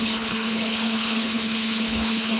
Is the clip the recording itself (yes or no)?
no